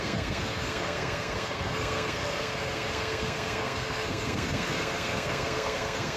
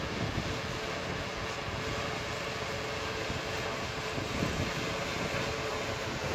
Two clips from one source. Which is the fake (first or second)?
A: first